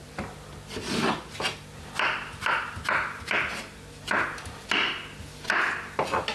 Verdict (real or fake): real